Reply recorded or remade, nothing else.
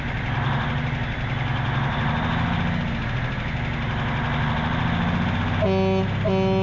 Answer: recorded